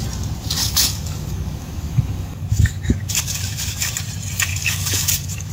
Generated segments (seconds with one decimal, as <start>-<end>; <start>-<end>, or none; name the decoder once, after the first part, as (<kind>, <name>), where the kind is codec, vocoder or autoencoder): 0.6-3.9 (codec, DAC); 4.5-5.5